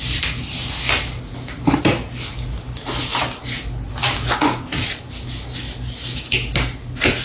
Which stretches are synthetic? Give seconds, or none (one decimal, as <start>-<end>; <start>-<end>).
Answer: 4.0-4.7